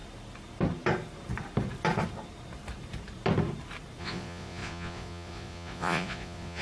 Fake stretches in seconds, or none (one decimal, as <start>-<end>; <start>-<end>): 4.0-6.6